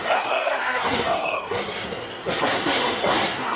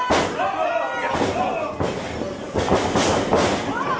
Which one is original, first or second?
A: second